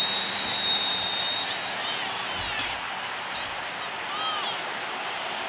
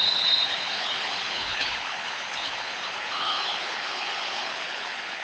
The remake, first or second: second